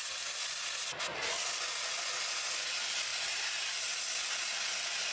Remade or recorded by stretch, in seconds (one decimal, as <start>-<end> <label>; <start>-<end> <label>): 0.0-3.1 recorded; 3.1-4.0 remade; 4.0-5.1 recorded

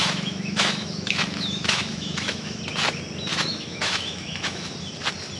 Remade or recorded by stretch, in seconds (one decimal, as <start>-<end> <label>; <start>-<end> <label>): 0.0-2.6 remade; 2.6-3.3 recorded; 3.3-4.7 remade; 4.7-5.4 recorded

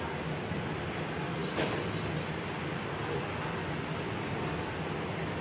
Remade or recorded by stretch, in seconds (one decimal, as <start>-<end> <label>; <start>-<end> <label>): 0.0-5.4 recorded

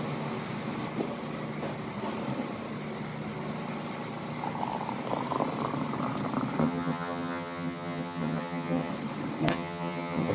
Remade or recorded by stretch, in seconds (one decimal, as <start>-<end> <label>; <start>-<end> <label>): 0.0-6.6 recorded; 6.6-8.9 remade; 8.9-9.5 recorded; 9.5-10.3 remade